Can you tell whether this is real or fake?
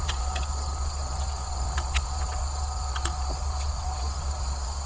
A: fake